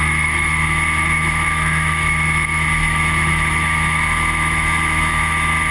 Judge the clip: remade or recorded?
remade